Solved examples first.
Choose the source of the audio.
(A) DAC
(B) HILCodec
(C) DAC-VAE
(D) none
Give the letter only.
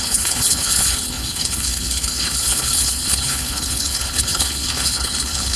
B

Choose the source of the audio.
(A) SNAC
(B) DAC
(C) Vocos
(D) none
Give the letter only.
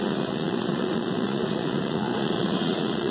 C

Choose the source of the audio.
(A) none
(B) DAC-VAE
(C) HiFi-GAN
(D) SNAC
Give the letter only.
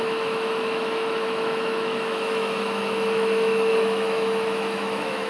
B